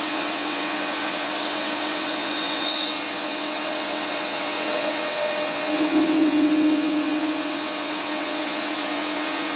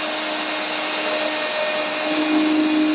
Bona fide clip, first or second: second